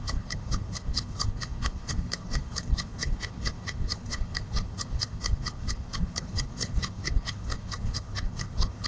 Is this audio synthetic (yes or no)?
yes